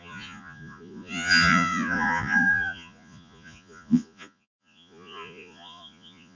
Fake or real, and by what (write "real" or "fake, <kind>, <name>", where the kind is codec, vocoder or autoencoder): fake, vocoder, Vocos